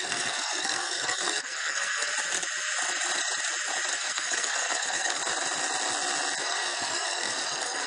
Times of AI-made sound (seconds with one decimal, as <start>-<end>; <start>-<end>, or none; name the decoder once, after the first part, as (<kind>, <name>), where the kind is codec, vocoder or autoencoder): 0.0-2.1 (codec, SNAC); 3.9-5.2; 6.4-7.9